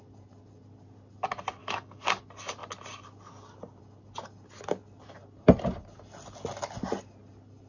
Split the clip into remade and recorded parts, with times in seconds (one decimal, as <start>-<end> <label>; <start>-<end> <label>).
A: 0.0-1.6 recorded; 1.6-2.2 remade; 2.2-7.7 recorded